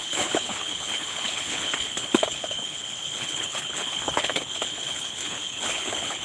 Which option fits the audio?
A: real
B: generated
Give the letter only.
B